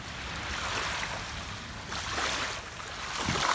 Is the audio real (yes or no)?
yes